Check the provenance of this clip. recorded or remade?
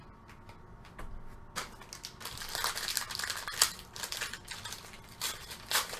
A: recorded